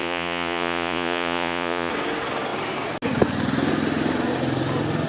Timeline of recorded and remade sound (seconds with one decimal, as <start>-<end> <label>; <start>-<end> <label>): 0.0-1.9 remade; 1.9-5.1 recorded